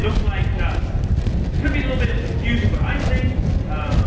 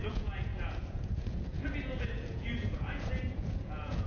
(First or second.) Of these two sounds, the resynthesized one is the second